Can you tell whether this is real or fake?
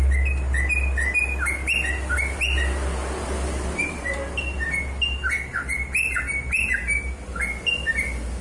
real